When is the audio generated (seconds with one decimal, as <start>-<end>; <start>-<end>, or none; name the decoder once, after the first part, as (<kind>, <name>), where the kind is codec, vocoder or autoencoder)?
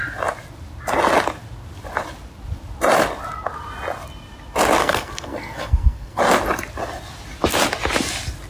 4.8-6.2 (codec, SNAC)